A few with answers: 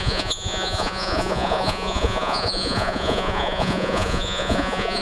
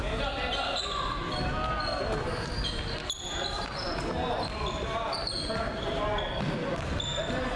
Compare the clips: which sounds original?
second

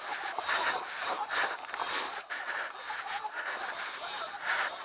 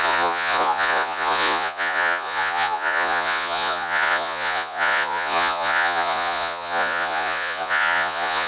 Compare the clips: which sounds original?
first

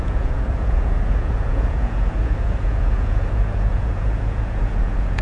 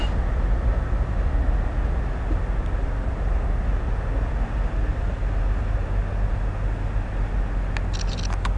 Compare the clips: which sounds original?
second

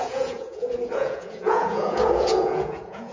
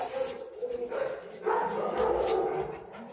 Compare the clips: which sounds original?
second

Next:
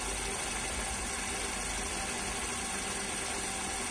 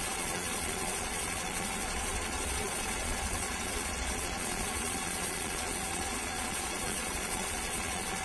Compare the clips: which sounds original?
first